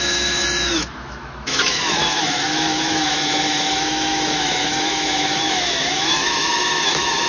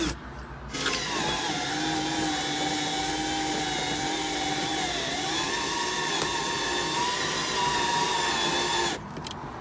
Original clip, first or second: second